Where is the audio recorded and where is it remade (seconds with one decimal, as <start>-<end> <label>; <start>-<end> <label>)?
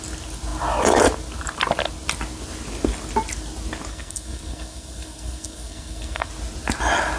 0.0-3.9 recorded; 3.9-6.3 remade; 6.3-7.2 recorded